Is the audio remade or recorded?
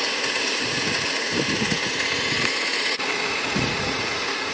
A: remade